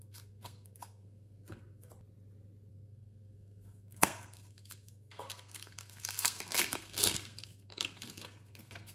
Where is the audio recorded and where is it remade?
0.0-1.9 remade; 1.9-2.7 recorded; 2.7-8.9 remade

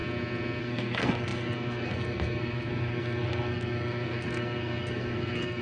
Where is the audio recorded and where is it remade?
0.0-0.6 recorded; 0.6-5.6 remade

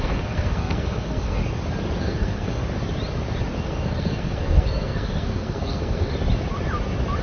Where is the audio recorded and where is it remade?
0.0-1.4 remade; 1.4-2.0 recorded; 2.0-2.6 remade; 2.6-3.6 recorded; 3.6-6.1 remade; 6.1-7.2 recorded